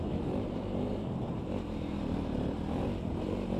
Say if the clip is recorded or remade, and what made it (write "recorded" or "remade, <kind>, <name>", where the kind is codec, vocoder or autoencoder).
remade, vocoder, BigVGAN v2